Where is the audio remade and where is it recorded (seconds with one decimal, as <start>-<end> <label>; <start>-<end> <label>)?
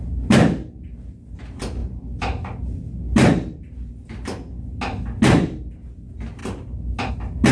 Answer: 0.0-7.5 recorded